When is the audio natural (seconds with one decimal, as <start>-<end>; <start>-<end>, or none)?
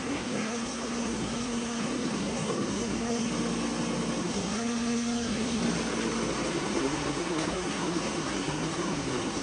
3.3-4.2; 5.6-6.5